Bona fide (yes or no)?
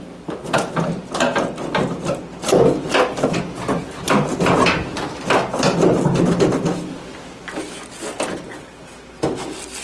yes